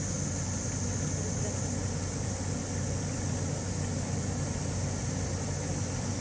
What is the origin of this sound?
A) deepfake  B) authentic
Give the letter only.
B